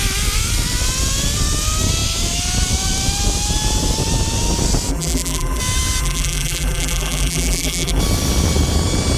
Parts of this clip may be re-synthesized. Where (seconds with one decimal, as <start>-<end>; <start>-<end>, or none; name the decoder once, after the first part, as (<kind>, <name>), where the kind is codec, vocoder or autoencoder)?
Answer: 4.9-5.6 (vocoder, BigVGAN v2); 6.0-8.0